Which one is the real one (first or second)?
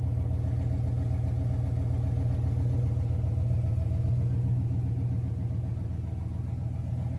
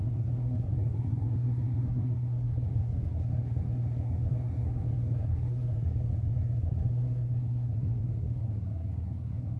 first